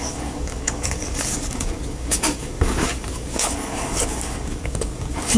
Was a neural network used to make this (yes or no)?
yes